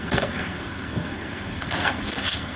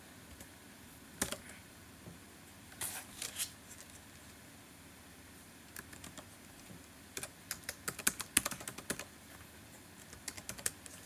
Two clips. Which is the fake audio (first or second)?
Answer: first